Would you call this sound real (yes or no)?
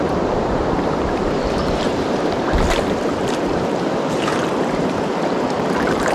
no